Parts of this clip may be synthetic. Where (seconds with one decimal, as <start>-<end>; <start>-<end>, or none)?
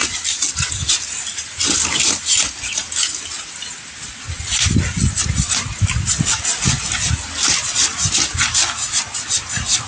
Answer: none